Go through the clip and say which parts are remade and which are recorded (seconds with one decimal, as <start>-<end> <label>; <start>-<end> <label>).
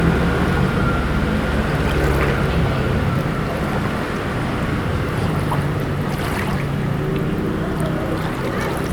0.0-4.9 recorded; 4.9-5.9 remade; 5.9-8.9 recorded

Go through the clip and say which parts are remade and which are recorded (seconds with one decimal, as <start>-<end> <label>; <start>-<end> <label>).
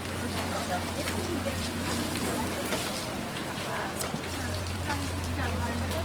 0.0-1.3 recorded; 1.3-4.9 remade; 4.9-6.0 recorded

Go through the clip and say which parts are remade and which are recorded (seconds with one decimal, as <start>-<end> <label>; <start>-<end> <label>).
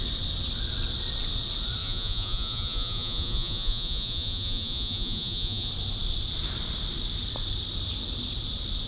0.0-1.8 recorded; 1.8-5.7 remade; 5.7-8.9 recorded